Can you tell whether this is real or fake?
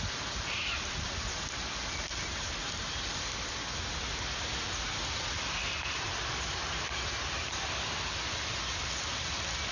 real